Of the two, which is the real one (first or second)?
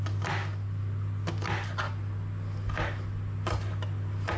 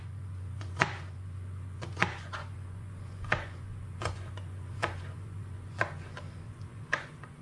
first